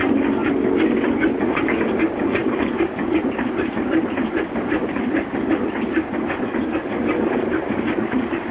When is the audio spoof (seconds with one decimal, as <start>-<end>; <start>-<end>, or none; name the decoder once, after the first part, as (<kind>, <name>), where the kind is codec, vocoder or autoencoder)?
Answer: none